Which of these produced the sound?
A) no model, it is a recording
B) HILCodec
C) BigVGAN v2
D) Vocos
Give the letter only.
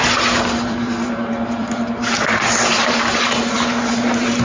C